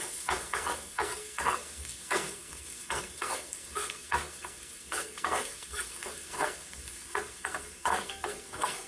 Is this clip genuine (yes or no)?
no